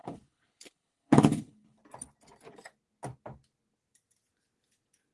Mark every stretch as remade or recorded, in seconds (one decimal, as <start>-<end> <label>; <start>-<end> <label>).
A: 0.0-1.8 remade; 1.8-5.1 recorded

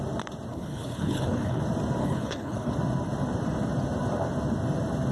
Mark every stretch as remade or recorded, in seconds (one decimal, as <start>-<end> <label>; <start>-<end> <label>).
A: 0.0-0.5 recorded; 0.5-1.6 remade; 1.6-2.0 recorded; 2.0-2.7 remade; 2.7-5.1 recorded

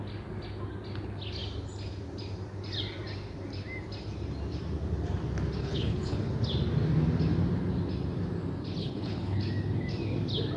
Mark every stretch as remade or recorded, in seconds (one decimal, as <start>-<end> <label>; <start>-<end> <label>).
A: 0.0-5.6 recorded; 5.6-6.3 remade; 6.3-8.8 recorded; 8.8-9.4 remade; 9.4-10.6 recorded

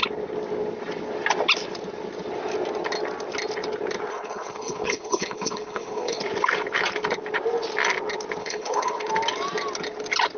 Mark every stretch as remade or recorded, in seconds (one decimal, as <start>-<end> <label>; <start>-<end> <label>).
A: 0.0-4.1 recorded; 4.1-6.2 remade; 6.2-8.4 recorded; 8.4-9.1 remade; 9.1-10.4 recorded

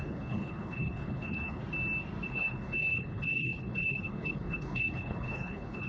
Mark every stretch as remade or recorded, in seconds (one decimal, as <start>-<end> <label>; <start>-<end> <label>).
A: 0.0-1.6 remade; 1.6-2.3 recorded; 2.3-5.9 remade

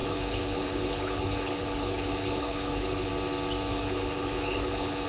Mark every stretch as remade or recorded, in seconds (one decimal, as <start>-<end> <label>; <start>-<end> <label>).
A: 0.0-3.1 remade; 3.1-3.7 recorded; 3.7-5.1 remade

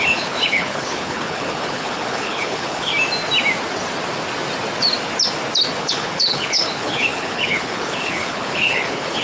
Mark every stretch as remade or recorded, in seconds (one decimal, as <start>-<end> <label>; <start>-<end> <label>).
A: 0.0-2.9 remade; 2.9-5.8 recorded; 5.8-9.2 remade

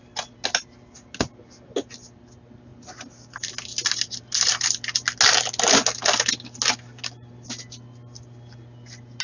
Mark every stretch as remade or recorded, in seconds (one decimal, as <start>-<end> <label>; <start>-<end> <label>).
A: 0.0-9.2 recorded